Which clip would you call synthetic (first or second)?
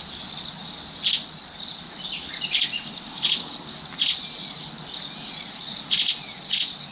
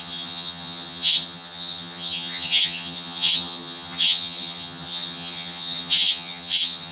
second